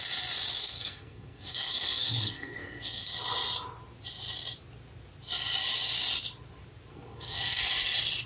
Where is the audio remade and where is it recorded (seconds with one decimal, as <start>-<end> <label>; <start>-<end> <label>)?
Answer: 0.0-0.6 recorded; 0.6-3.1 remade; 3.1-6.9 recorded; 6.9-7.6 remade; 7.6-8.3 recorded